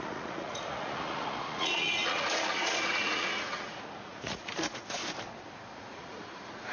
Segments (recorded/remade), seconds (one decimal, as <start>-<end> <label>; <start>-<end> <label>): 0.0-5.0 remade; 5.0-5.6 recorded; 5.6-6.7 remade